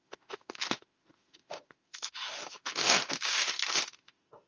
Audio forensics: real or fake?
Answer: fake